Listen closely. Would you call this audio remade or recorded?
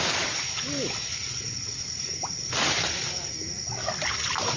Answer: recorded